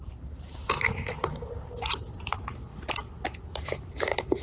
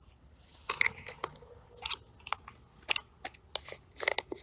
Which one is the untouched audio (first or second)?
second